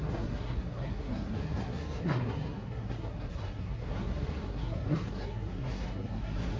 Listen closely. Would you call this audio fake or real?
fake